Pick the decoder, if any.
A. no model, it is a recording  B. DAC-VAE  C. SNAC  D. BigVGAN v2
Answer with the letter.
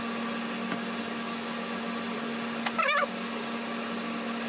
A